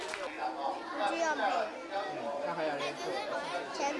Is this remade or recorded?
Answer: recorded